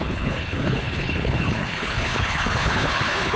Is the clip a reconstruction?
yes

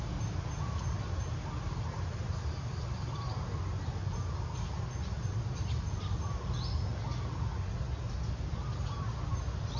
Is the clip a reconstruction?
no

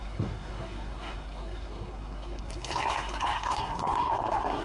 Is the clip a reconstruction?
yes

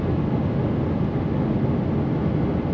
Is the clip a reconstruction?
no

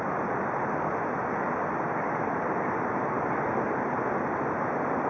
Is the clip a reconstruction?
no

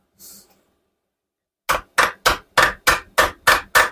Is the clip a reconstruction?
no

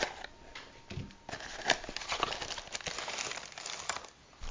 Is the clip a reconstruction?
no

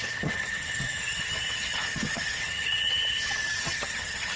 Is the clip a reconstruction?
yes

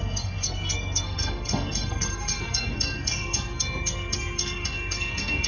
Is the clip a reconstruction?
yes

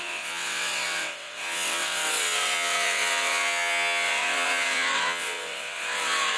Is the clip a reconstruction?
yes